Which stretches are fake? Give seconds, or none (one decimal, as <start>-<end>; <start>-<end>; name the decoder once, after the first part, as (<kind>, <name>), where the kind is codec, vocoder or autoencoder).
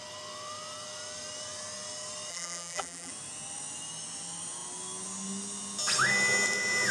2.3-3.1 (vocoder, BigVGAN v2)